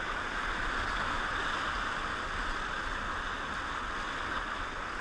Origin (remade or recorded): recorded